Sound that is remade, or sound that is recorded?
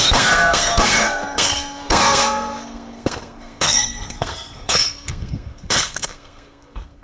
remade